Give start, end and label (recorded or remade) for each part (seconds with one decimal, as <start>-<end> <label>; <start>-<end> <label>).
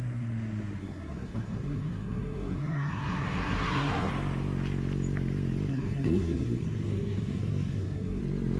0.0-0.8 recorded; 0.8-4.1 remade; 4.1-5.7 recorded; 5.7-8.2 remade; 8.2-8.6 recorded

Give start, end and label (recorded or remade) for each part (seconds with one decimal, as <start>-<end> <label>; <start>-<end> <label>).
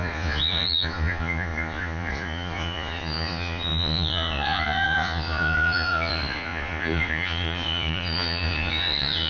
0.0-9.3 remade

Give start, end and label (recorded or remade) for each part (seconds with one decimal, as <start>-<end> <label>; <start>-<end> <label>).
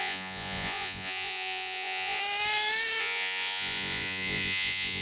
0.0-2.2 remade; 2.2-3.0 recorded; 3.0-5.0 remade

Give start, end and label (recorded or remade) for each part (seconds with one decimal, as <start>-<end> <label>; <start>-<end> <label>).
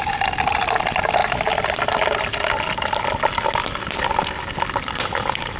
0.0-5.6 recorded